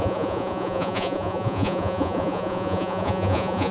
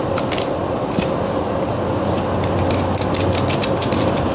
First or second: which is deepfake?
first